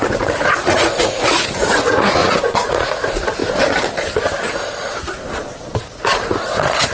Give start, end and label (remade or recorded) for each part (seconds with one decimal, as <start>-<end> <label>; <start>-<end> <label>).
0.0-2.2 remade; 2.2-2.7 recorded; 2.7-3.4 remade; 3.4-5.8 recorded; 5.8-6.9 remade